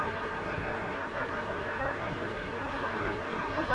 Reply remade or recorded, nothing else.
remade